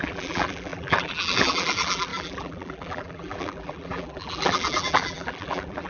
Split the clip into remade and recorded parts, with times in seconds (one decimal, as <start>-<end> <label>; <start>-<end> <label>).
0.0-5.9 remade